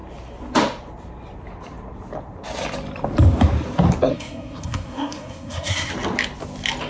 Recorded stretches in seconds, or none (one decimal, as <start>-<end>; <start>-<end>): 0.0-4.1; 5.9-6.9